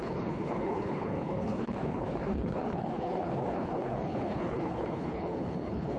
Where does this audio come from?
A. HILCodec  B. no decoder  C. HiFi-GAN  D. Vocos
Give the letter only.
A